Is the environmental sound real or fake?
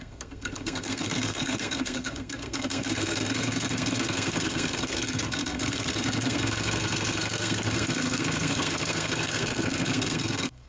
fake